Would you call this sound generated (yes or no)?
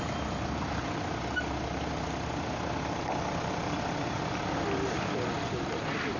no